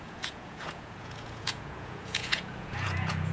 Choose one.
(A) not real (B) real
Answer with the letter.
A